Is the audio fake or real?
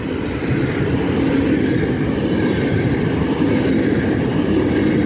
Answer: real